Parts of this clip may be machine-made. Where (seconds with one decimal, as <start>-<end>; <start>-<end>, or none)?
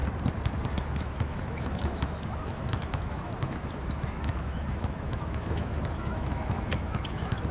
0.7-7.5